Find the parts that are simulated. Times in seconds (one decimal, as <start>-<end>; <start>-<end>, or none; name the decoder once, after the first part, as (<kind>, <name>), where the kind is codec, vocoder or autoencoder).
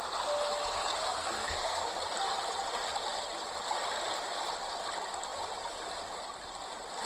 1.0-1.9 (codec, SNAC)